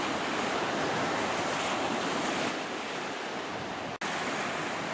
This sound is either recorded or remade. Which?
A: recorded